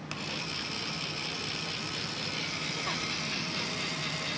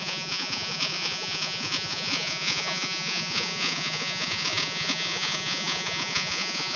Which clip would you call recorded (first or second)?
first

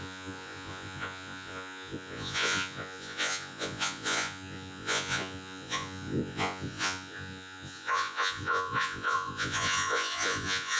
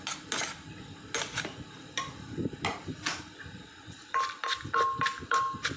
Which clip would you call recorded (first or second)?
second